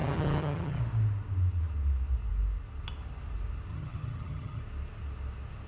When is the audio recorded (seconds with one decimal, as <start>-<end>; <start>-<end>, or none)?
0.8-3.7; 4.6-5.7